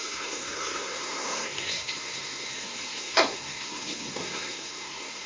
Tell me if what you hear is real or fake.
fake